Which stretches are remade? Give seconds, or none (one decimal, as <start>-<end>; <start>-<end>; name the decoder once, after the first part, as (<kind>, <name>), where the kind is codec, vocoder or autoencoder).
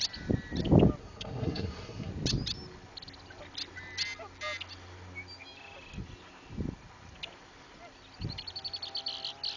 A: 1.0-2.1 (codec, SNAC)